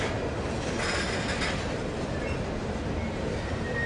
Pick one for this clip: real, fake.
real